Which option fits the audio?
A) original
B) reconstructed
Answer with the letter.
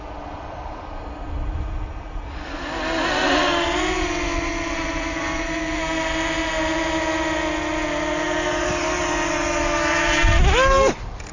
A